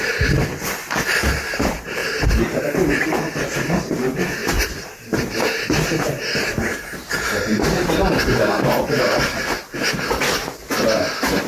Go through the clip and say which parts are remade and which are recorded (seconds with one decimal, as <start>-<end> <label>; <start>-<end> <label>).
0.0-2.0 recorded; 2.0-2.6 remade; 2.6-4.4 recorded; 4.4-8.2 remade; 8.2-11.5 recorded